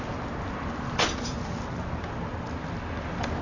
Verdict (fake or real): real